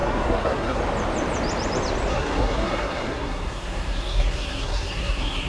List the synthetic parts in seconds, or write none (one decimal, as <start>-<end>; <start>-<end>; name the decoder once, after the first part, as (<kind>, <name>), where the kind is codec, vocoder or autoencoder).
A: 0.0-0.8 (codec, SNAC); 2.1-5.5